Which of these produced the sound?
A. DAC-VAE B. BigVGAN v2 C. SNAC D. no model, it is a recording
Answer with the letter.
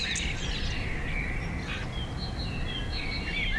D